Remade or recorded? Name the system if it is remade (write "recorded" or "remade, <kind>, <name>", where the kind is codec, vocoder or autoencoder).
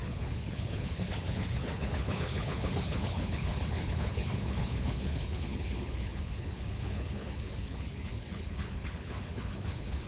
remade, codec, HILCodec